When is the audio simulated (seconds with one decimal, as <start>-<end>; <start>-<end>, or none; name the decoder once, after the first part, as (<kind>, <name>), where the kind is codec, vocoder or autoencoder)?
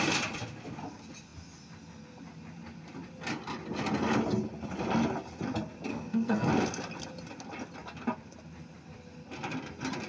5.9-6.5 (codec, SNAC)